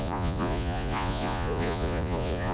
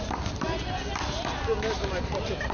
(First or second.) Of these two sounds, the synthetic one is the first